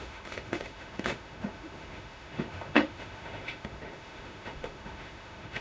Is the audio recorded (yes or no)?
no